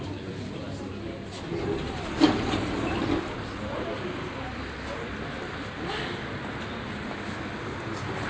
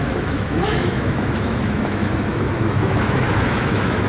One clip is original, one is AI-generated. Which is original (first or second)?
first